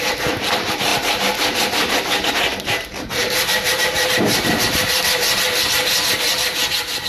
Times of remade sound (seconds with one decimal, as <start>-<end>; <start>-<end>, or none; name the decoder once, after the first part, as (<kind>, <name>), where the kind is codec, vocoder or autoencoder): none